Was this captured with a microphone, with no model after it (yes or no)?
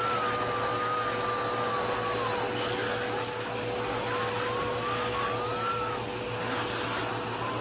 yes